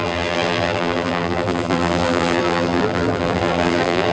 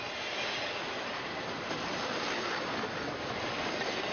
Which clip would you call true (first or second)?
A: second